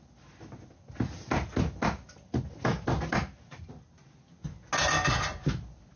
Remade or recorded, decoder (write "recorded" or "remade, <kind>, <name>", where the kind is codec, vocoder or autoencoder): recorded